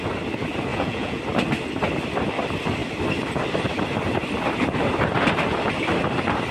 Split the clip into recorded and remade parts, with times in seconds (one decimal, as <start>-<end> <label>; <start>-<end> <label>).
0.0-0.7 recorded; 0.7-1.2 remade; 1.2-6.5 recorded